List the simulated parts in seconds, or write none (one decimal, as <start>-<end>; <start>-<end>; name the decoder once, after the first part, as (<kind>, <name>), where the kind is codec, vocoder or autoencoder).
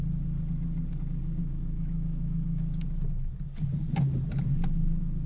1.4-2.6 (autoencoder, DAC-VAE)